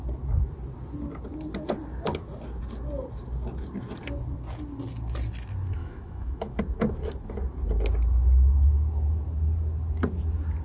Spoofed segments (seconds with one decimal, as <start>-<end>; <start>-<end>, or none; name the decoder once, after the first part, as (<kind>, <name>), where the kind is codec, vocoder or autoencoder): 5.8-6.6 (autoencoder, DAC-VAE)